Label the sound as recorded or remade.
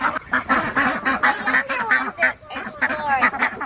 recorded